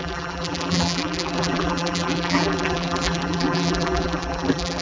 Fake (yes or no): yes